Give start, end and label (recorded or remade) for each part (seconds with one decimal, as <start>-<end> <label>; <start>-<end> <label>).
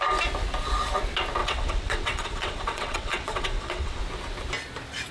0.0-1.4 recorded; 1.4-4.0 remade; 4.0-5.1 recorded